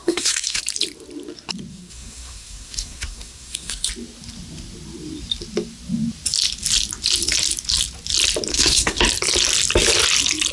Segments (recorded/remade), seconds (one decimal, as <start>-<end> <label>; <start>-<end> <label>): 0.0-0.6 remade; 0.6-1.7 recorded; 1.7-3.9 remade; 3.9-8.5 recorded; 8.5-9.0 remade; 9.0-10.5 recorded